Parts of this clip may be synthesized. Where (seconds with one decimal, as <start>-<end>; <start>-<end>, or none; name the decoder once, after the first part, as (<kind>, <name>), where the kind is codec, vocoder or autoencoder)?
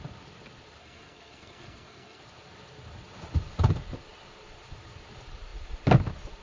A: 0.8-2.2 (codec, SNAC)